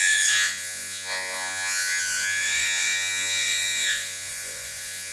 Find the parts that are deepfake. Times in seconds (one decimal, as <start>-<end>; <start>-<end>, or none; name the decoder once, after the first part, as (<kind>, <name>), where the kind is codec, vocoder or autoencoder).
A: 0.0-5.1 (vocoder, Vocos)